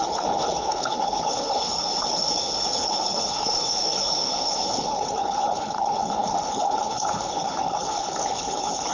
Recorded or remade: remade